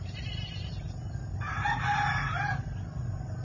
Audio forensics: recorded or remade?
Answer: recorded